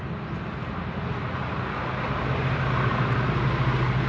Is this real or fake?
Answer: real